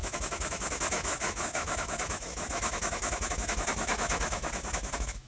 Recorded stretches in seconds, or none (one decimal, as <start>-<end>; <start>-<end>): none